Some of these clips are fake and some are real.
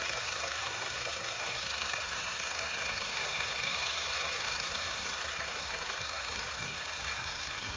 fake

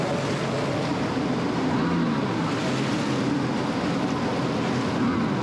real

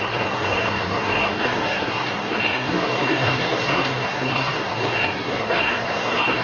fake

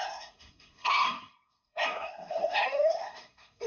fake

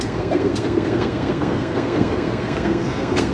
fake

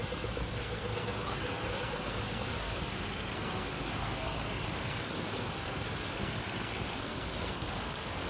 fake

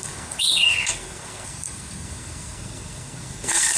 fake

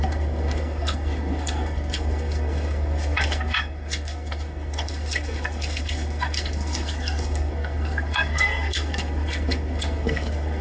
fake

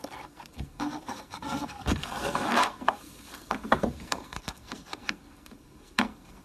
fake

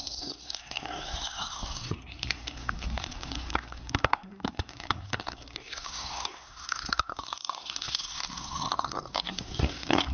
fake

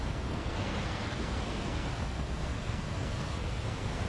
fake